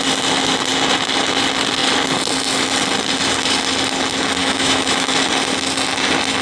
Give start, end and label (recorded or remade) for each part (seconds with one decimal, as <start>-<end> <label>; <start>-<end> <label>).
0.0-4.4 recorded; 4.4-5.1 remade; 5.1-6.4 recorded